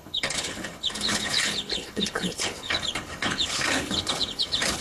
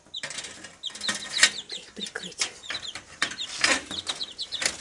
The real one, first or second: second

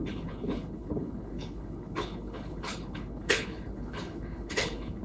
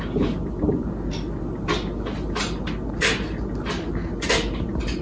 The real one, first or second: second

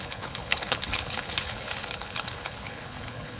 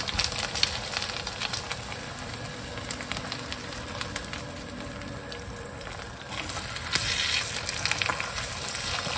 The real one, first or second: second